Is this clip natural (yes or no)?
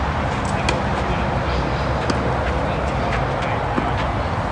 yes